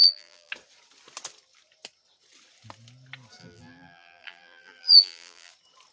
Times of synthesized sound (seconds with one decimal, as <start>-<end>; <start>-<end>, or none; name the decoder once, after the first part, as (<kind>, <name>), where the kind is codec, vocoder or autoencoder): 0.0-0.5 (vocoder, BigVGAN v2); 3.4-5.5

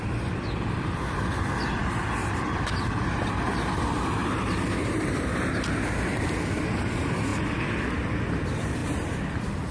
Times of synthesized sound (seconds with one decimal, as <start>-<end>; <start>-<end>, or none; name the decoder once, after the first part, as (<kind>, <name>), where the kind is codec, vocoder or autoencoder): 4.2-5.5 (vocoder, BigVGAN v2)

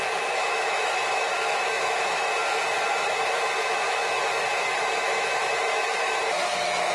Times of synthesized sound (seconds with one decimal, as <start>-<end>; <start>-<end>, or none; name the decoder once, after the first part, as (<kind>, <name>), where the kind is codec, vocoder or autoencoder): 0.0-6.9 (autoencoder, DAC-VAE)

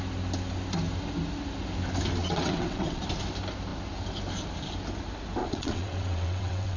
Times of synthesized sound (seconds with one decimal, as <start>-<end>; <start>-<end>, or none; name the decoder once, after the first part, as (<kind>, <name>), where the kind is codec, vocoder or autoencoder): 2.2-3.0 (vocoder, WaveNeXt); 5.4-6.8

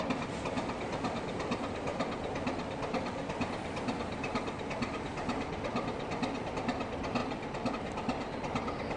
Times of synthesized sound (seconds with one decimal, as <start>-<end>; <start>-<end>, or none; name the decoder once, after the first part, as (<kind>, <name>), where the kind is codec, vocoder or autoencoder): none

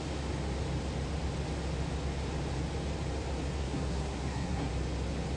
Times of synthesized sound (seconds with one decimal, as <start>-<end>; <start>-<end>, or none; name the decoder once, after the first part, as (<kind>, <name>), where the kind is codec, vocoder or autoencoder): 3.6-4.7 (codec, SNAC)